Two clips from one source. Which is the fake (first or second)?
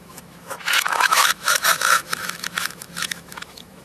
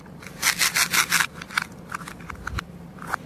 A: first